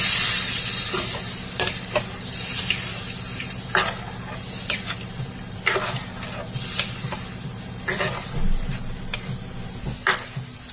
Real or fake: real